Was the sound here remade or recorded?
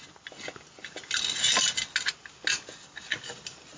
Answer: recorded